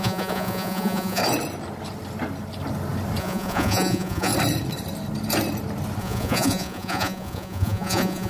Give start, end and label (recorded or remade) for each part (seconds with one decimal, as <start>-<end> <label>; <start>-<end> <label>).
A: 0.0-1.2 remade; 1.2-3.2 recorded; 3.2-4.3 remade; 4.3-6.0 recorded; 6.0-8.3 remade